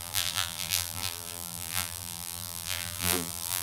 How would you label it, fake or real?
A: fake